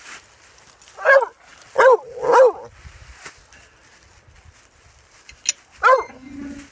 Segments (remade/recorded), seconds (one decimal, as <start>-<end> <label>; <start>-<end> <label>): 0.0-6.7 recorded